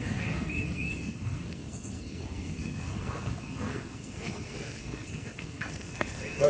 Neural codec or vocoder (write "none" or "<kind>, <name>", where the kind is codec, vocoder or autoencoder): codec, SNAC